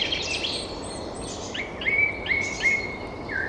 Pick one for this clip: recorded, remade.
remade